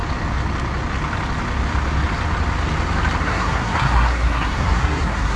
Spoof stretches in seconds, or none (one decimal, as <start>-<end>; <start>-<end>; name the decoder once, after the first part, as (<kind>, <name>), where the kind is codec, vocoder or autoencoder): 3.2-5.4 (codec, SNAC)

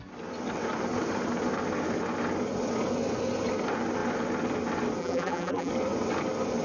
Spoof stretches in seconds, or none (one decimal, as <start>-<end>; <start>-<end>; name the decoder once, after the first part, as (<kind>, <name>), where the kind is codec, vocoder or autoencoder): 5.0-5.7 (vocoder, BigVGAN v2)

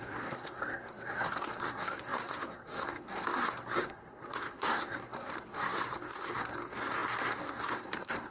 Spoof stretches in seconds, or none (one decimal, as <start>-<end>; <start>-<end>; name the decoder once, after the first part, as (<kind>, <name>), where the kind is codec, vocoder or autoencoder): 0.0-8.3 (codec, SNAC)